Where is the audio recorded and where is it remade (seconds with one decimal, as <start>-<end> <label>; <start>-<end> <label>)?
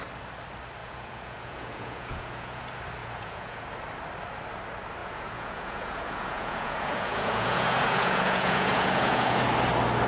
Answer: 0.0-0.8 recorded; 0.8-2.6 remade; 2.6-3.0 recorded; 3.0-3.7 remade; 3.7-5.0 recorded; 5.0-9.4 remade; 9.4-10.1 recorded